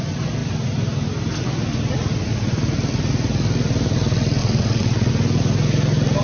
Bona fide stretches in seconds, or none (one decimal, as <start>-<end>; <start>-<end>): 0.0-4.4; 5.1-6.2